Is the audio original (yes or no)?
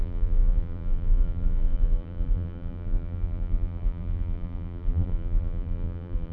no